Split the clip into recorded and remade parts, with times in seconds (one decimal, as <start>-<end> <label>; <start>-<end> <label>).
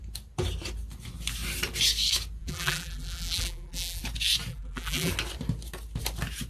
0.0-2.4 recorded; 2.4-4.0 remade; 4.0-4.5 recorded; 4.5-5.1 remade; 5.1-6.5 recorded